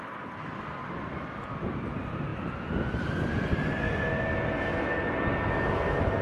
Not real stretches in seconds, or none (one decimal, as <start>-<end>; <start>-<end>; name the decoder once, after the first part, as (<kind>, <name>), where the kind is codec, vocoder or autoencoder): none